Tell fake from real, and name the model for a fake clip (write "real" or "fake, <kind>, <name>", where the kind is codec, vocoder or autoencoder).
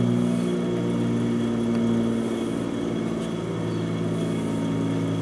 real